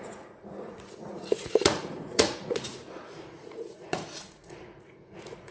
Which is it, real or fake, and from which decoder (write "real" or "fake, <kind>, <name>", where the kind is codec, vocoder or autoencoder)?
fake, vocoder, Vocos